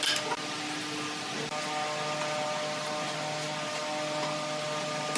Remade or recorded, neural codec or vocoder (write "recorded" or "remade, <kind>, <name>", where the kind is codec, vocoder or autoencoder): recorded